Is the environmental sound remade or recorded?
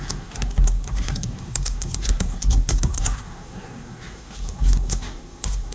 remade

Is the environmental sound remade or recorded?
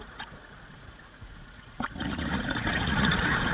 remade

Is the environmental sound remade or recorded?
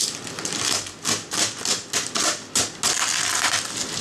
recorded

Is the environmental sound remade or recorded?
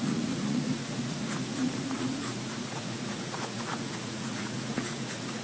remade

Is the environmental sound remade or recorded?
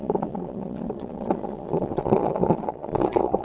remade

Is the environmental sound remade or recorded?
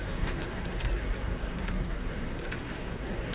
remade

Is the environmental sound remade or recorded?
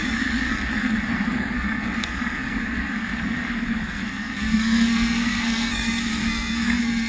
remade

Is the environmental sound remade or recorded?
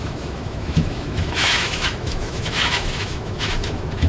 remade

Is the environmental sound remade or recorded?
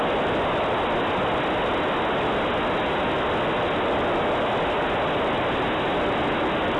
recorded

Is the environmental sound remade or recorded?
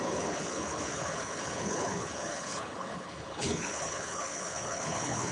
remade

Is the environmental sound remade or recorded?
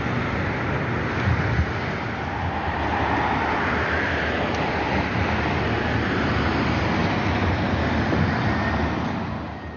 recorded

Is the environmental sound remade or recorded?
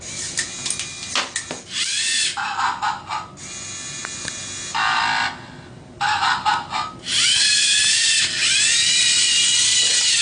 recorded